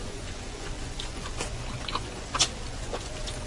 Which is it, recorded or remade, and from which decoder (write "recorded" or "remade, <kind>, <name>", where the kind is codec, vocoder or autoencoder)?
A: remade, vocoder, Vocos